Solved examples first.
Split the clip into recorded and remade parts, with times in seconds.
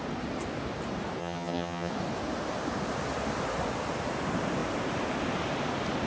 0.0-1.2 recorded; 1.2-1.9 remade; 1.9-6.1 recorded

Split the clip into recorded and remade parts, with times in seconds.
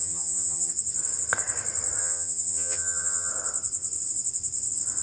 0.0-0.7 remade; 0.7-2.0 recorded; 2.0-3.3 remade; 3.3-5.0 recorded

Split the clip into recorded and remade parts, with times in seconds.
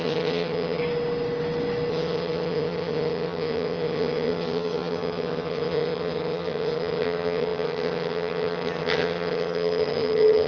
0.0-0.8 remade; 0.8-1.9 recorded; 1.9-10.5 remade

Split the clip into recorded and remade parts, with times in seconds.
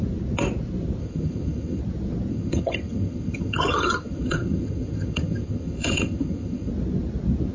0.0-1.0 recorded; 1.0-1.8 remade; 1.8-2.3 recorded; 2.3-6.7 remade; 6.7-7.5 recorded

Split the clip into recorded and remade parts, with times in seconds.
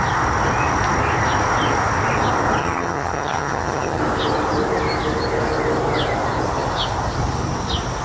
0.0-2.6 recorded; 2.6-4.0 remade; 4.0-8.0 recorded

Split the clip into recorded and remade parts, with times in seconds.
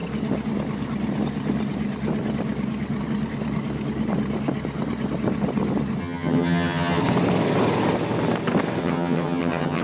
0.0-6.0 recorded; 6.0-7.0 remade; 7.0-8.8 recorded; 8.8-9.8 remade